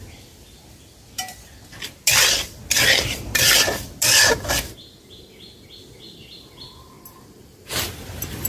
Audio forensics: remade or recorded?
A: recorded